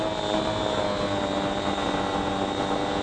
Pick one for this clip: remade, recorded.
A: recorded